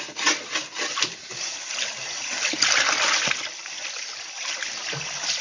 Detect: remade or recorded recorded